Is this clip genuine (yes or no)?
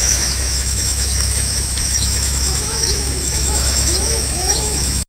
no